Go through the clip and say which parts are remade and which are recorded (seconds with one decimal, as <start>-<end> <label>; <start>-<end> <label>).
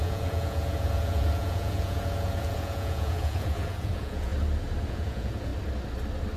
0.0-4.3 remade; 4.3-4.9 recorded; 4.9-5.5 remade; 5.5-6.4 recorded